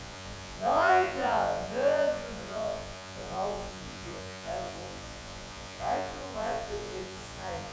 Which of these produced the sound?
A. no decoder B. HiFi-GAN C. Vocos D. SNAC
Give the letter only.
C